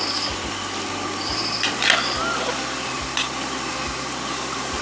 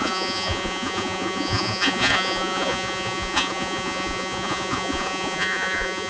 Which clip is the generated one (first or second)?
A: second